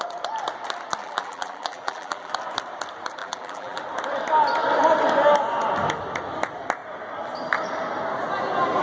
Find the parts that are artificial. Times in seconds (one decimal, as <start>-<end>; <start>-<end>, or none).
1.0-2.3; 3.2-3.8